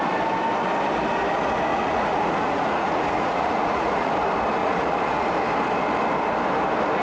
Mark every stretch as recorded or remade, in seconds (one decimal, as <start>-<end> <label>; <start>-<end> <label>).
0.0-1.7 recorded; 1.7-4.1 remade; 4.1-4.6 recorded; 4.6-5.3 remade; 5.3-7.0 recorded